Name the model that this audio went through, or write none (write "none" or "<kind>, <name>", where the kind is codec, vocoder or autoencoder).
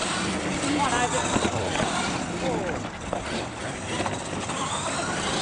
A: none